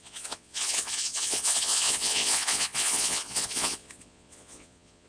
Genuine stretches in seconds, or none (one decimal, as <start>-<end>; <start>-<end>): none